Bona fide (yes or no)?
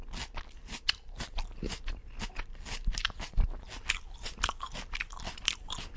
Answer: yes